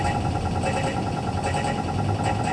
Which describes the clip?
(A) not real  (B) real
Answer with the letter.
B